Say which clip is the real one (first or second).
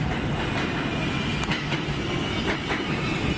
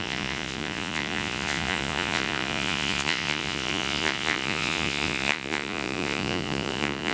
first